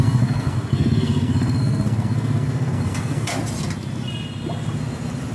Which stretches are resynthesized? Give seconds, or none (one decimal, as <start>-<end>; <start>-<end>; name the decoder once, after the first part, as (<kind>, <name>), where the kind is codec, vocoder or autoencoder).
0.0-3.3 (codec, SNAC)